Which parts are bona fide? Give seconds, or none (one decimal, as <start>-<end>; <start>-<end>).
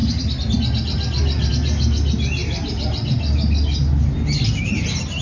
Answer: 0.0-5.2